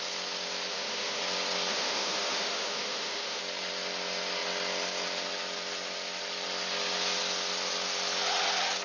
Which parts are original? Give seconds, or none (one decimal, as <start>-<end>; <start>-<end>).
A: 0.0-0.7; 1.2-1.7; 3.4-8.8